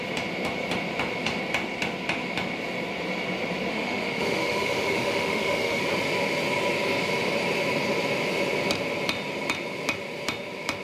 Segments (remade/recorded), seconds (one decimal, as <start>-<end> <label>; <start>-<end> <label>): 0.0-3.7 recorded; 3.7-5.8 remade; 5.8-10.8 recorded